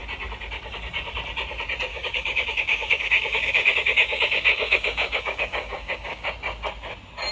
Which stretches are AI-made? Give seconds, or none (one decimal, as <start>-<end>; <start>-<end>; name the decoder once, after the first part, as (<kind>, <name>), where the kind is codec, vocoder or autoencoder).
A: 1.9-6.3 (codec, DAC)

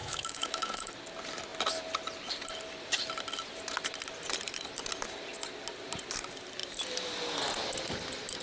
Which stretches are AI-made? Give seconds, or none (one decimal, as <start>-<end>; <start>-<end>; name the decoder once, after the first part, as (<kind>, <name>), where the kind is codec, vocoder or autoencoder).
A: 0.0-0.9 (autoencoder, DAC-VAE)

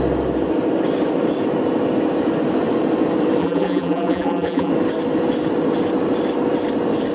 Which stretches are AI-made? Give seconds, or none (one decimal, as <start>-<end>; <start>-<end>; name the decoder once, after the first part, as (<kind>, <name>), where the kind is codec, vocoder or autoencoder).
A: 3.4-4.7 (vocoder, BigVGAN v2)

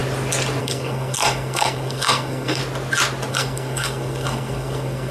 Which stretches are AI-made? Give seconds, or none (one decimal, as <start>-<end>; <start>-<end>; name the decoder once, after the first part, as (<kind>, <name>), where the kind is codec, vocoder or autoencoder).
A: 0.6-2.6 (codec, SNAC); 3.3-5.1

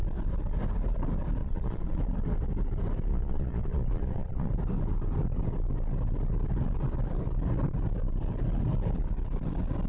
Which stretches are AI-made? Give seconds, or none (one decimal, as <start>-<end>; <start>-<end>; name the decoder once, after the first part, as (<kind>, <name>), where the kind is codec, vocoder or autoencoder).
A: 1.4-2.0 (vocoder, Vocos); 3.1-4.5

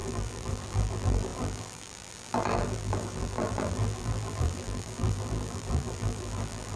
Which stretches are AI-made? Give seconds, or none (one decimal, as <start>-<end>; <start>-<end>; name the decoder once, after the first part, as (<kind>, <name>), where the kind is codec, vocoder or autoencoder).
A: 0.0-6.8 (vocoder, BigVGAN v2)

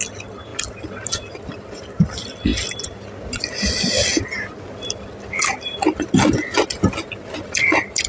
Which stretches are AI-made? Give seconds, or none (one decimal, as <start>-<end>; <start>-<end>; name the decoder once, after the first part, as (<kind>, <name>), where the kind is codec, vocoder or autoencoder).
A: none

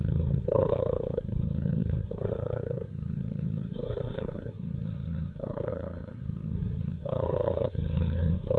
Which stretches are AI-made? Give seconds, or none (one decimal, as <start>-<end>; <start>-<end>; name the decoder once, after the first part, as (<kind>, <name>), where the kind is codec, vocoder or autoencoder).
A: 0.0-8.6 (codec, SNAC)